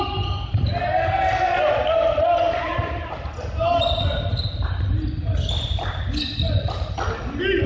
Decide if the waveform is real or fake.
real